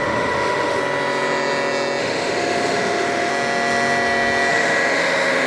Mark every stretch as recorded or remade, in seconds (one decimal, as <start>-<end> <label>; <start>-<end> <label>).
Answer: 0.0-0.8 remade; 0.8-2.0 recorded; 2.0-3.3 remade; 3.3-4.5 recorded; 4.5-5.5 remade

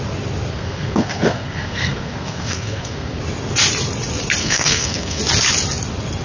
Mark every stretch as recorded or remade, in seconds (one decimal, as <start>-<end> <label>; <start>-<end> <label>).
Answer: 0.0-0.5 recorded; 0.5-3.2 remade; 3.2-4.4 recorded; 4.4-5.2 remade; 5.2-6.2 recorded

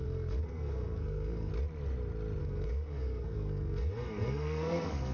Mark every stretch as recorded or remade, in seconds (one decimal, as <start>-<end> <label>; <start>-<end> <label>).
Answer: 0.0-1.5 remade; 1.5-2.4 recorded; 2.4-5.1 remade

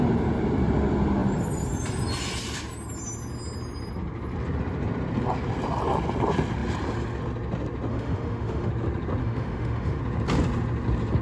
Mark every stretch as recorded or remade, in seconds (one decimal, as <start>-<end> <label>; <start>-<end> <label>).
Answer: 0.0-7.9 recorded; 7.9-8.7 remade; 8.7-9.2 recorded; 9.2-10.0 remade; 10.0-11.2 recorded

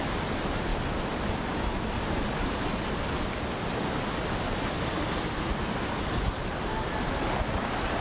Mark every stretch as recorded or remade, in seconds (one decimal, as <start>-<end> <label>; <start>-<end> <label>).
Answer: 0.0-8.0 recorded

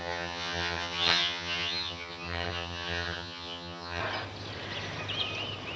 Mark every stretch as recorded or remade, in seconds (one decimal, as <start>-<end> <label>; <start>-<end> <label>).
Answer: 0.0-4.0 remade; 4.0-5.8 recorded